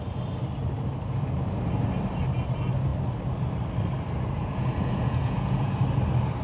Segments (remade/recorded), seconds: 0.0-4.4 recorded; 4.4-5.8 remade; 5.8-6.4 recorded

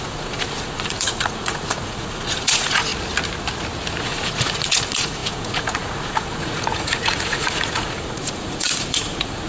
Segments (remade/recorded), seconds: 0.0-2.9 remade; 2.9-4.0 recorded; 4.0-9.5 remade

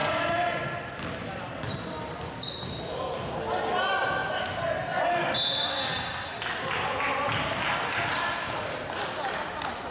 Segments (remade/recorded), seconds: 0.0-9.9 recorded

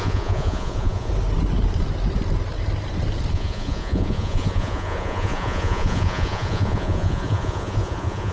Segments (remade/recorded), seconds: 0.0-1.1 remade; 1.1-3.3 recorded; 3.3-8.3 remade